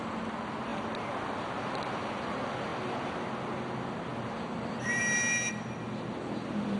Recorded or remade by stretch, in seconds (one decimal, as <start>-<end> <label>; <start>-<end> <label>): 0.0-4.1 recorded; 4.1-5.0 remade; 5.0-6.8 recorded